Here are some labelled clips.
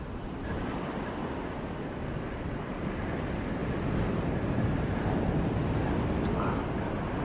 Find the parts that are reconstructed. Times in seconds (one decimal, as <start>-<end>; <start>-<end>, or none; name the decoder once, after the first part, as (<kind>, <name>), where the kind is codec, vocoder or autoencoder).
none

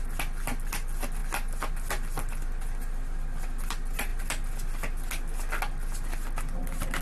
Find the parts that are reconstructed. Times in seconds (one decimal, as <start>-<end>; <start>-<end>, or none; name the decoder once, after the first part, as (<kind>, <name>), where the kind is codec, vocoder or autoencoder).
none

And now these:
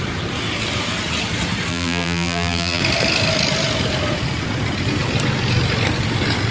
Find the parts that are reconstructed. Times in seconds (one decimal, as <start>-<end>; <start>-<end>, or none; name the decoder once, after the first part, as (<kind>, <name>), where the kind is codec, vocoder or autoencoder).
1.7-2.8 (vocoder, BigVGAN v2)